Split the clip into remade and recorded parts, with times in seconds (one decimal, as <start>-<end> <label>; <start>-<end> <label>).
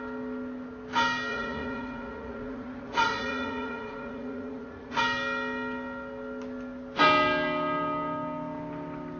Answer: 0.0-1.3 recorded; 1.3-5.0 remade; 5.0-9.2 recorded